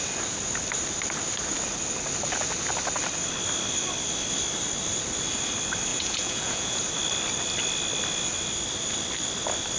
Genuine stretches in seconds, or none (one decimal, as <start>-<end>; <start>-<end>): 0.0-5.9; 6.8-9.8